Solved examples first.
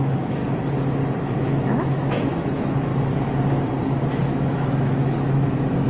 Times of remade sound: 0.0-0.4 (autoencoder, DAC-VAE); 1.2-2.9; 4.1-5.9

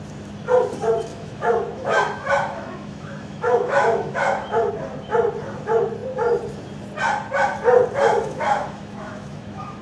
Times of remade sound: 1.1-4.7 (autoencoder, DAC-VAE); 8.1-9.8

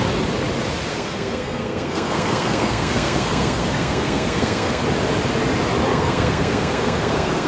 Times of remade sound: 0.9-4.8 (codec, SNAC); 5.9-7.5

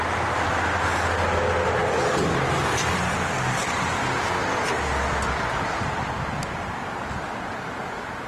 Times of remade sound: none

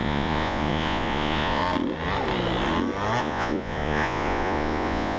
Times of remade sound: 0.0-1.6 (vocoder, Vocos); 3.2-5.2

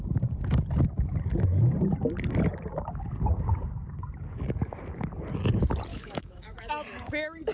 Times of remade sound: 5.9-6.7 (autoencoder, DAC-VAE)

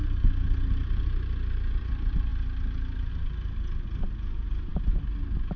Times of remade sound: none

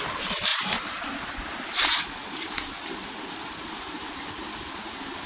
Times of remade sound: 0.5-2.0 (vocoder, BigVGAN v2); 3.6-4.2